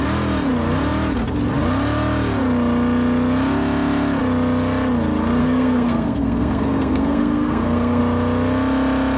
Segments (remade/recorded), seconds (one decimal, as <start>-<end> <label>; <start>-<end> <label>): 0.0-5.4 recorded; 5.4-8.0 remade; 8.0-9.2 recorded